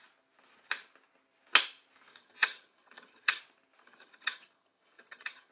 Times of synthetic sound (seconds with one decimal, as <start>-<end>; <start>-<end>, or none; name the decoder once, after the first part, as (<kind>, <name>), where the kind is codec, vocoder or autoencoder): 2.1-3.4 (vocoder, HiFi-GAN); 3.8-5.5